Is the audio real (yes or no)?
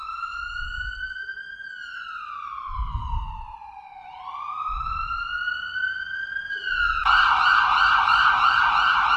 yes